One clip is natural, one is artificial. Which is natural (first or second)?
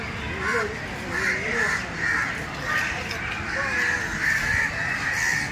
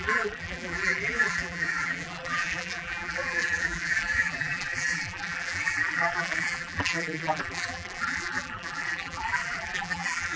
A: first